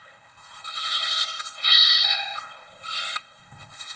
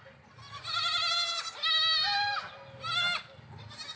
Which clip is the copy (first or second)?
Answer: first